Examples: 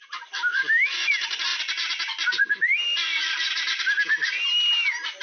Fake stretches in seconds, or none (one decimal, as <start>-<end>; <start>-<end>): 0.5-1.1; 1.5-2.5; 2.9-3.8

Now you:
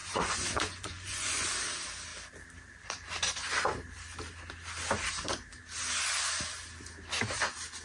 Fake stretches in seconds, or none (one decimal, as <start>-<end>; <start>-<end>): 0.0-1.5

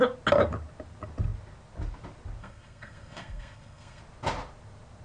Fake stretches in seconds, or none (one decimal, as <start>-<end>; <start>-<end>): 2.4-4.0

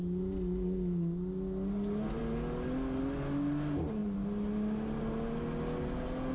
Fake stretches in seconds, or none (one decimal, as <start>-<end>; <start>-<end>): none